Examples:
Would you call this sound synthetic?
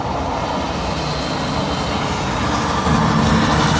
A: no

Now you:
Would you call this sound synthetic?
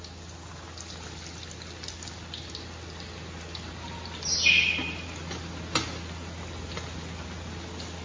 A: no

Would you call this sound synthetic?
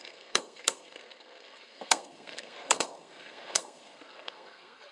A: yes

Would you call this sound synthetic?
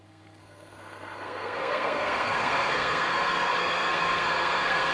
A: yes